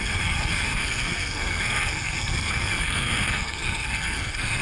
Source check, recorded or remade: remade